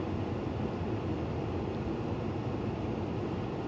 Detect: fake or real real